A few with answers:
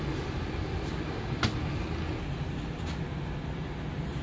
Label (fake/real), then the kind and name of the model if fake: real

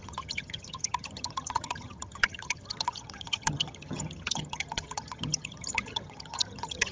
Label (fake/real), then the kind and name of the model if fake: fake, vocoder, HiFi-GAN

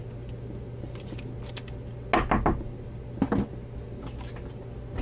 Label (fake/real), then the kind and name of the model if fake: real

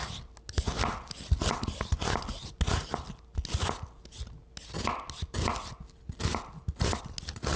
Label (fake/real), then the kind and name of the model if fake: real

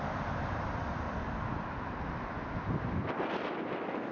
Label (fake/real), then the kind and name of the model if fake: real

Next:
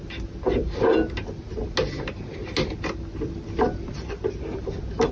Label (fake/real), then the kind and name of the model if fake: real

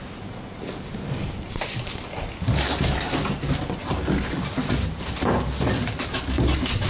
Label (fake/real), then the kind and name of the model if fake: real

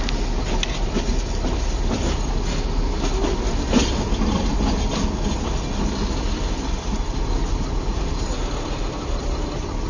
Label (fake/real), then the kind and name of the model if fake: real